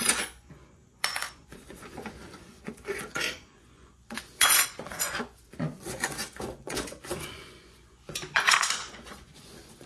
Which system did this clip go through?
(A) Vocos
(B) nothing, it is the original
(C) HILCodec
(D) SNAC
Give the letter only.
A